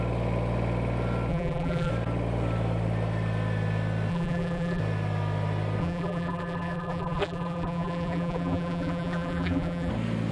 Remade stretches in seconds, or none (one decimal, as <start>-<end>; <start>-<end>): 1.3-1.9; 4.1-4.8; 5.8-9.9